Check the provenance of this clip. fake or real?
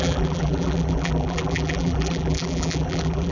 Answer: fake